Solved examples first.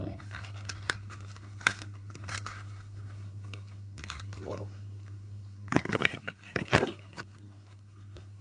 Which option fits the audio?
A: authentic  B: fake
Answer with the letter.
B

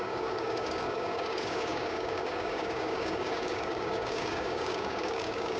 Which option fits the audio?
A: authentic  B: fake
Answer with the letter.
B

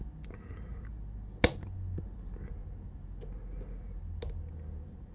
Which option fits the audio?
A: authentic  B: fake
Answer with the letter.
A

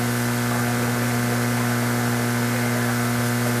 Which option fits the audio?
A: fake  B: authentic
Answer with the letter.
B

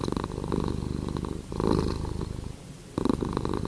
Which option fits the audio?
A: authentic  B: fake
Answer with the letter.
A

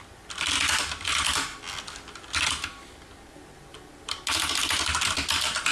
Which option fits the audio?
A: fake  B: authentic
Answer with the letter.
B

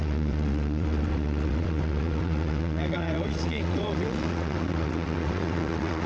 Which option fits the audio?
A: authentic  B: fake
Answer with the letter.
B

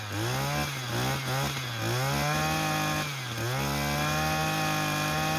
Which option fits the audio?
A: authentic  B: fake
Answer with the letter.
A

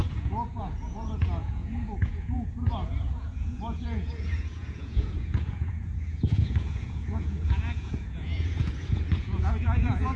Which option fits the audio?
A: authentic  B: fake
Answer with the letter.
B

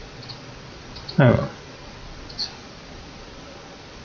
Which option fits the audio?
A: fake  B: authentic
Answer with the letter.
A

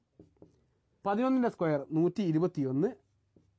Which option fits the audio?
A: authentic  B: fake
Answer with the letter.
A